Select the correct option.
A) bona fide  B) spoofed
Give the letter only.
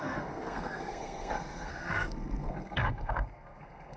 B